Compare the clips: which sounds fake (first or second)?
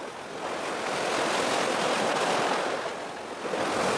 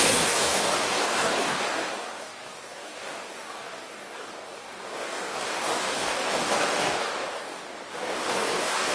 second